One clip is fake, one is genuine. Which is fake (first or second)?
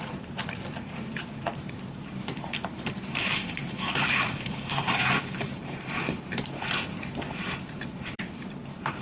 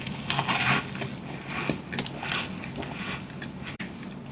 first